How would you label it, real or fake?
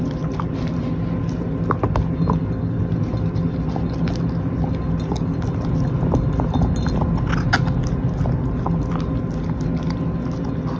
real